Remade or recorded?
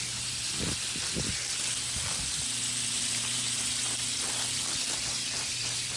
recorded